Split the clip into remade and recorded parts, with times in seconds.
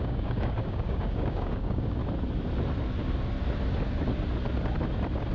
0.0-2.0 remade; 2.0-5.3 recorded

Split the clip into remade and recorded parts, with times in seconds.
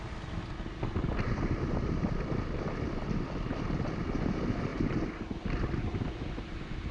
0.0-6.9 recorded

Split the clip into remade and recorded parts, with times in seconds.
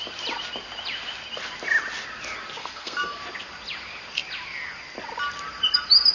0.0-2.6 recorded; 2.6-3.2 remade; 3.2-6.1 recorded